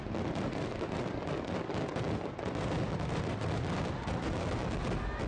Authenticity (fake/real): real